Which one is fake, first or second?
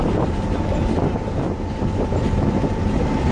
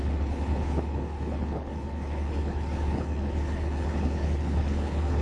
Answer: second